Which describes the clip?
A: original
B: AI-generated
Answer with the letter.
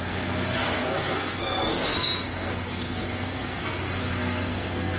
B